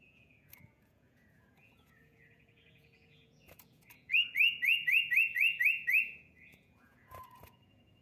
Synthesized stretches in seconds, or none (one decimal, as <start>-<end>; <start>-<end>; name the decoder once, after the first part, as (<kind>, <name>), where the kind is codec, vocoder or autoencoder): 0.0-8.0 (vocoder, Vocos)